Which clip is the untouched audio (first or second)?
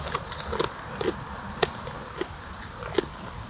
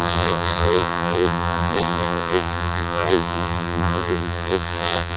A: first